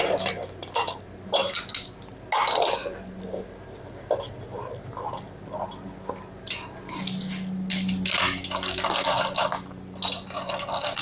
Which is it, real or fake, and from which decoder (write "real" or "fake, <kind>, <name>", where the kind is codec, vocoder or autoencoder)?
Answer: real